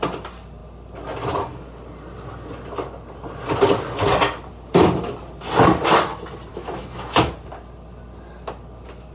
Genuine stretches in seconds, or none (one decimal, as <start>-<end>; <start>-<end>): 0.0-6.5; 7.3-9.1